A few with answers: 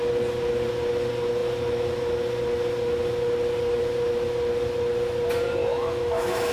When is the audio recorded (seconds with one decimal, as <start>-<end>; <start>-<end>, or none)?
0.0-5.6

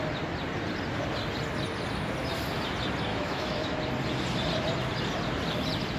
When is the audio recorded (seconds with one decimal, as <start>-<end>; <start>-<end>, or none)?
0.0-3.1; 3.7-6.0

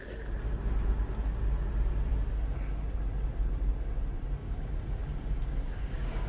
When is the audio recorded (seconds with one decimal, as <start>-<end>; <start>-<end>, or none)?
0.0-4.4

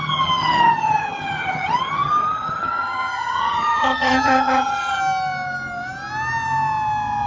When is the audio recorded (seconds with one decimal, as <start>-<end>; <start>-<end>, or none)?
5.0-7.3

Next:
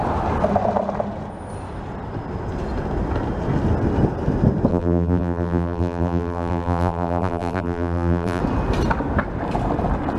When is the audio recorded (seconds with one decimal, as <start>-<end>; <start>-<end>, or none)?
0.0-4.7; 8.4-10.2